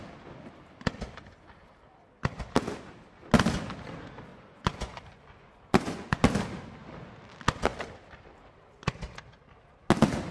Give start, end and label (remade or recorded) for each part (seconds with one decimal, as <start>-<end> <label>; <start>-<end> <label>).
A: 0.0-4.3 recorded; 4.3-6.2 remade; 6.2-10.3 recorded